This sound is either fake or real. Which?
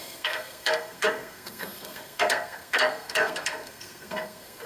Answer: fake